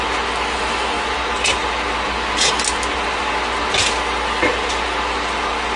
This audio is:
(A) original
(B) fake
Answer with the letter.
A